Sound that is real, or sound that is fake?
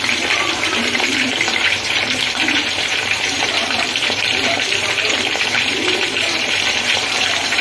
fake